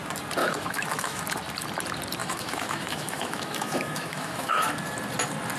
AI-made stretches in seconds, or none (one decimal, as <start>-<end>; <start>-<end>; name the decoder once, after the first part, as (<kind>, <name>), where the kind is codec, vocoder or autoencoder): 0.4-1.2 (autoencoder, DAC-VAE); 2.2-4.7

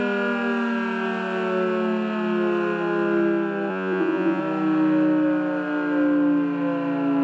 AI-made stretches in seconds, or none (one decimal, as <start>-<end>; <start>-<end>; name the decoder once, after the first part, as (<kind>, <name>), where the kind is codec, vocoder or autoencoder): 3.7-4.4 (vocoder, Vocos)

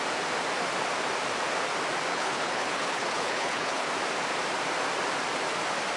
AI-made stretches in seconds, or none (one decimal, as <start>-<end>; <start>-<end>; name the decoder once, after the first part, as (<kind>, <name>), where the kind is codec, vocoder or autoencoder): 2.1-3.9 (codec, HILCodec)

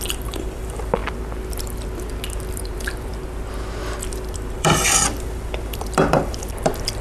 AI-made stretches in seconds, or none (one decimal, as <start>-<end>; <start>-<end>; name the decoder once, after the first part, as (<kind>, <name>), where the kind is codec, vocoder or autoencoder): 0.0-1.0 (vocoder, BigVGAN v2); 2.5-3.1; 4.1-7.0

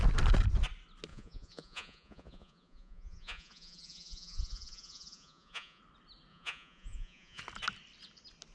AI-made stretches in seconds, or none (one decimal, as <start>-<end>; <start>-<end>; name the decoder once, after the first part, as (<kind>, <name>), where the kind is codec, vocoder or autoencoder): 1.1-5.8 (vocoder, Vocos); 6.3-7.4